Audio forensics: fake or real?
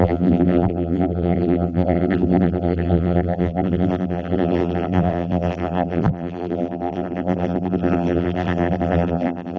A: fake